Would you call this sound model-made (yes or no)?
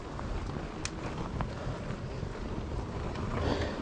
no